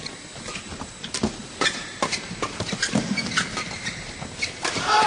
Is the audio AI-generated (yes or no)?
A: no